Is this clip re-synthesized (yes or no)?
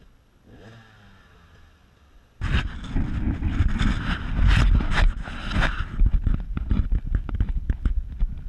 no